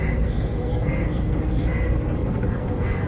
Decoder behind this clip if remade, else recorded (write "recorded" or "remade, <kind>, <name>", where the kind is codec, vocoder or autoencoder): remade, codec, SNAC